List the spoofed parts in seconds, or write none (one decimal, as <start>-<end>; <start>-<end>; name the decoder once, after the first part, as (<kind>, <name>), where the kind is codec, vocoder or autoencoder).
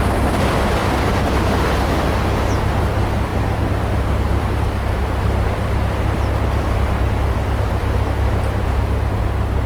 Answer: none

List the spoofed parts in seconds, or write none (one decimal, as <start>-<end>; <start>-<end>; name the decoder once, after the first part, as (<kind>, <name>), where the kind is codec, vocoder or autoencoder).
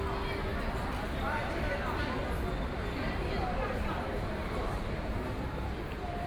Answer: 3.0-5.3 (vocoder, BigVGAN v2)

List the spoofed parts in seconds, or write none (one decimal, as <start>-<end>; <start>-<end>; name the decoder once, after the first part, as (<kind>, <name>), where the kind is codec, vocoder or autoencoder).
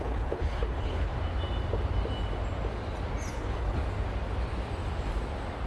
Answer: 0.0-1.1 (codec, HILCodec); 3.3-3.8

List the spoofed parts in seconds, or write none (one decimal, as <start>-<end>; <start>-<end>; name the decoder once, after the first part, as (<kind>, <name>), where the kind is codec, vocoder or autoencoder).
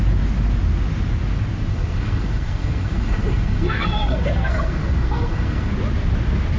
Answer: 1.7-5.7 (codec, SNAC)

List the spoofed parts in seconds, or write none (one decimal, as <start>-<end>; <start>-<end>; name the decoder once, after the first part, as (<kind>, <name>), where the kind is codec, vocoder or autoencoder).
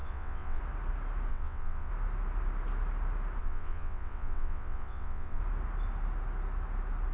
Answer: 0.0-0.6 (vocoder, WaveNeXt); 1.3-1.9; 3.4-5.4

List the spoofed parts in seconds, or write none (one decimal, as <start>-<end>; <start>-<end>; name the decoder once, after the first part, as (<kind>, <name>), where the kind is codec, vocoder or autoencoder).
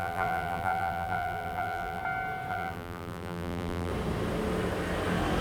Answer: 0.0-2.0 (vocoder, BigVGAN v2); 2.5-3.9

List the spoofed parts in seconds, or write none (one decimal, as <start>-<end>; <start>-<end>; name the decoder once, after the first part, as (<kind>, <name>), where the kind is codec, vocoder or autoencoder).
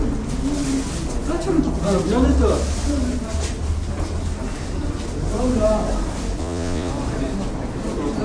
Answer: 6.4-6.9 (vocoder, Vocos)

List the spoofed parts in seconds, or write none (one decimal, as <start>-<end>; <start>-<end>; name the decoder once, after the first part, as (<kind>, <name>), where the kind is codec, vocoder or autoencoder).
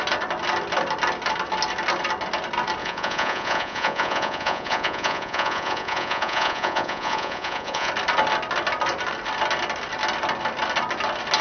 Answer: 2.8-7.9 (vocoder, Vocos)